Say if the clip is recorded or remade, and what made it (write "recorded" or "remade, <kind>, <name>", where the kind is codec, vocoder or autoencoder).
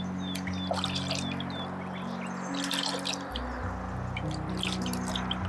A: recorded